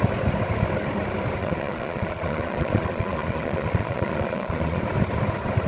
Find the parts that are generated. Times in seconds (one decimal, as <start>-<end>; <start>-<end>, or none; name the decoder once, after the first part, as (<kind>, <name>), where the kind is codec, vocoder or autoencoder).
1.4-4.8 (vocoder, Vocos)